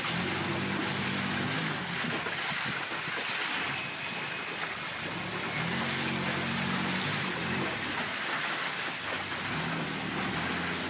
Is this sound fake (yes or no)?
no